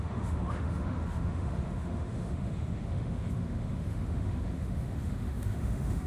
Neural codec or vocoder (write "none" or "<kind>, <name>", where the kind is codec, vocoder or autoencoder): autoencoder, DAC-VAE